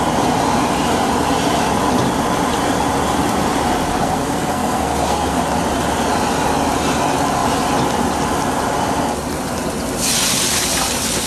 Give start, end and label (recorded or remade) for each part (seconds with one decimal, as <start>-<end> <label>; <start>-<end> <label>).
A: 0.0-4.0 recorded; 4.0-5.4 remade; 5.4-11.3 recorded